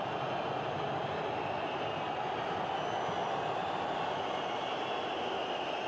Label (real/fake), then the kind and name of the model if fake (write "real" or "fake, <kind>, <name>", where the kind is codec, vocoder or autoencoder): real